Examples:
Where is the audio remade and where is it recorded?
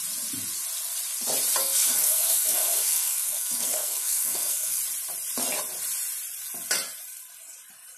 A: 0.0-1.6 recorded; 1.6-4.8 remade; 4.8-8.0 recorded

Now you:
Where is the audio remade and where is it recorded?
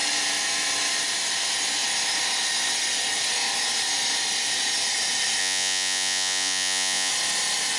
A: 0.0-5.4 recorded; 5.4-7.1 remade; 7.1-7.8 recorded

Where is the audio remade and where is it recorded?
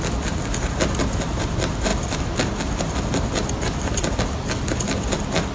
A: 0.0-5.5 recorded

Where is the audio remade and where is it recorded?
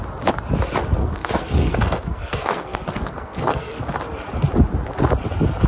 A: 0.0-1.0 recorded; 1.0-3.8 remade; 3.8-5.7 recorded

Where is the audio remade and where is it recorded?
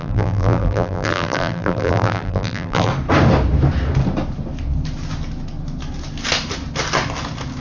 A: 0.0-2.9 remade; 2.9-7.6 recorded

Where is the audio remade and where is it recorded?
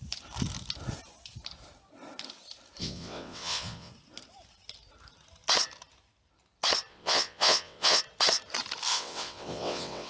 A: 0.0-2.8 recorded; 2.8-3.9 remade; 3.9-6.9 recorded; 6.9-8.0 remade; 8.0-8.9 recorded; 8.9-10.1 remade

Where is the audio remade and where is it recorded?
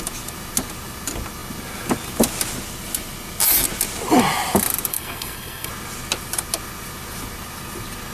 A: 0.0-4.9 recorded; 4.9-5.7 remade; 5.7-8.1 recorded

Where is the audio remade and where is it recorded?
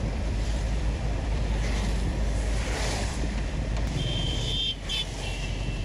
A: 0.0-4.9 remade; 4.9-5.8 recorded